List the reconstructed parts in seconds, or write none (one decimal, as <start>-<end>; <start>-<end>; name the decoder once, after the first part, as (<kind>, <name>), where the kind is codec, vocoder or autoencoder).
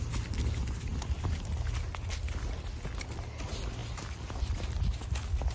none